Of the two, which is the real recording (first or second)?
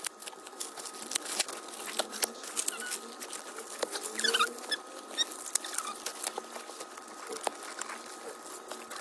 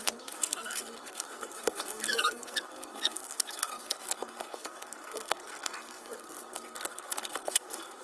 first